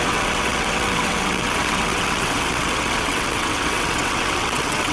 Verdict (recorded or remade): remade